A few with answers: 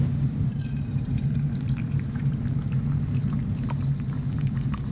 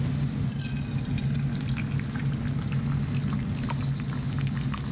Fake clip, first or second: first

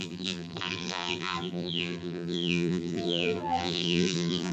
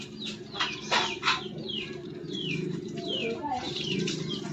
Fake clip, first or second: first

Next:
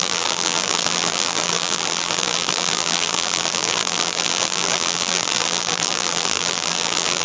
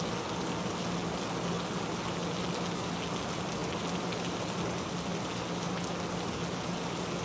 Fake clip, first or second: first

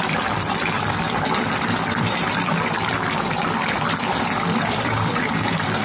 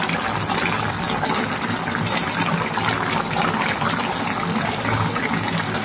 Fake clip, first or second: first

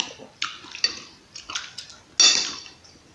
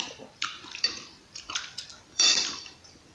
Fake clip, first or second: second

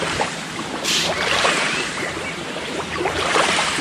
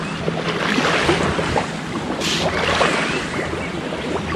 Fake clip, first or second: first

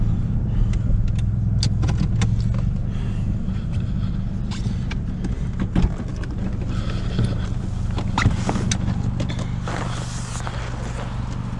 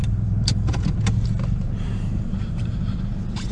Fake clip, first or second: second